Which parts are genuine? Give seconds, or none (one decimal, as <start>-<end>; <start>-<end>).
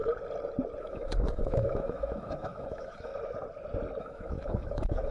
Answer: 0.0-0.8; 3.1-4.0